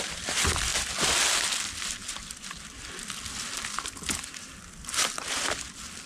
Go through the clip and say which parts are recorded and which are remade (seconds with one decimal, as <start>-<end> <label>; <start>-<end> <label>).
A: 0.0-0.7 remade; 0.7-1.4 recorded; 1.4-2.0 remade; 2.0-5.2 recorded; 5.2-6.1 remade